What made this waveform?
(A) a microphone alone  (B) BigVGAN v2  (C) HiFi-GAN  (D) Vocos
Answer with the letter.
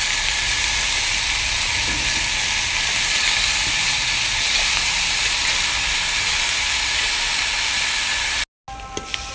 A